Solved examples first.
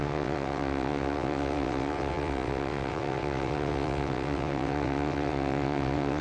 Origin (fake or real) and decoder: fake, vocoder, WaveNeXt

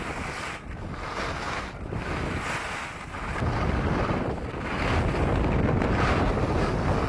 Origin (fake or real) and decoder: real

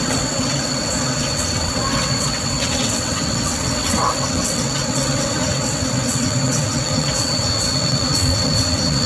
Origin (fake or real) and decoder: fake, vocoder, WaveNeXt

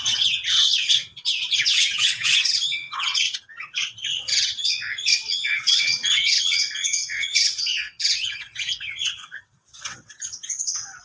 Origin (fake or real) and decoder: fake, vocoder, WaveNeXt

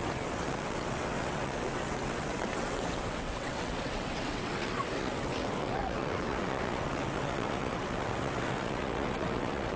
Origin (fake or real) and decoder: fake, vocoder, WaveNeXt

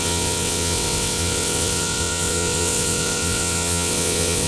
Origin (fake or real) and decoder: fake, vocoder, WaveNeXt